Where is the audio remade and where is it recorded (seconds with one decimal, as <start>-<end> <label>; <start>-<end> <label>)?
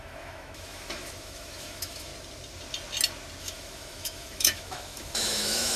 0.0-2.1 remade; 2.1-3.4 recorded; 3.4-5.8 remade